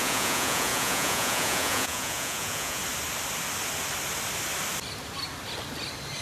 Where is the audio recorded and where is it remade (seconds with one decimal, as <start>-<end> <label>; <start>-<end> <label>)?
0.0-2.8 remade; 2.8-6.2 recorded